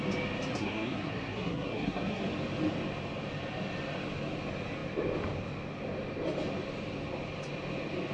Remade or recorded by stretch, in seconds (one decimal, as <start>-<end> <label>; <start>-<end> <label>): 0.0-0.5 recorded; 0.5-2.2 remade; 2.2-8.1 recorded